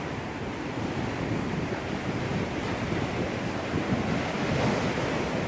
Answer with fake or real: real